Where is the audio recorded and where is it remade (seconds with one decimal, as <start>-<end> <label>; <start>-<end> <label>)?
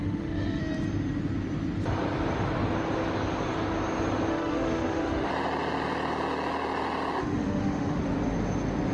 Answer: 0.0-0.6 remade; 0.6-4.3 recorded; 4.3-5.3 remade; 5.3-7.2 recorded; 7.2-8.0 remade; 8.0-8.9 recorded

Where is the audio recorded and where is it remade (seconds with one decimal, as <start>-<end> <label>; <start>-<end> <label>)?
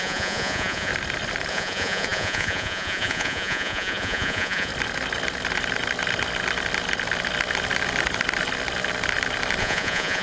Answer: 0.0-0.9 remade; 0.9-1.5 recorded; 1.5-4.7 remade; 4.7-9.6 recorded; 9.6-10.2 remade